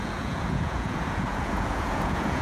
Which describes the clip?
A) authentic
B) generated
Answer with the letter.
B